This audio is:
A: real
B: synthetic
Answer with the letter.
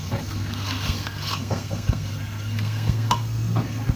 B